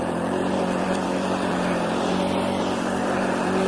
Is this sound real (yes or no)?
no